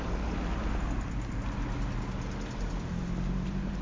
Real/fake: real